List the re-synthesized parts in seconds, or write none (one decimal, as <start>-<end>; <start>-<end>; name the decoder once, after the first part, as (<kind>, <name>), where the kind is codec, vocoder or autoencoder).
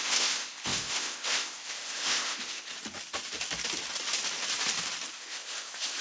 0.0-2.7 (codec, ZipCodec); 5.1-6.0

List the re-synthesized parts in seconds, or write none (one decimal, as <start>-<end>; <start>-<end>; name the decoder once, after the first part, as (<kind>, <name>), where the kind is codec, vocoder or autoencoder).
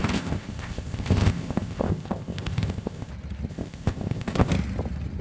0.0-3.1 (codec, ZipCodec); 3.5-4.5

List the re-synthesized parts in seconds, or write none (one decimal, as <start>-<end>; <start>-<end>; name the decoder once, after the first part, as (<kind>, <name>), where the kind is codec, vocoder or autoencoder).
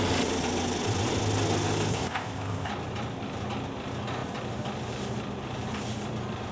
1.9-2.7 (codec, ZipCodec)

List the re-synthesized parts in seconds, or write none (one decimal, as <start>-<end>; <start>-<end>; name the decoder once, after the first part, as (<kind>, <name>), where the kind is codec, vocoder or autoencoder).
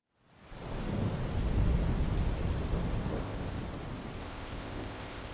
3.2-3.6 (codec, ZipCodec); 4.2-5.3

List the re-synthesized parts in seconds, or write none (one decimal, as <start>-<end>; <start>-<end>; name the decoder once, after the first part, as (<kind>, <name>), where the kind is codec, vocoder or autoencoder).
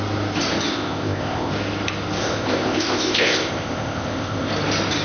0.7-1.5 (codec, ZipCodec); 2.2-4.5